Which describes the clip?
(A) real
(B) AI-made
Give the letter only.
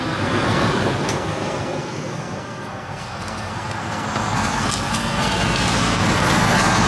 B